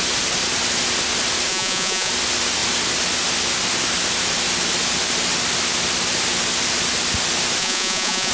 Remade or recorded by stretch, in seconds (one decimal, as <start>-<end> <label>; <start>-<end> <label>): 0.0-1.5 recorded; 1.5-2.1 remade; 2.1-7.6 recorded; 7.6-8.3 remade